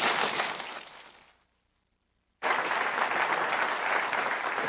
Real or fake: real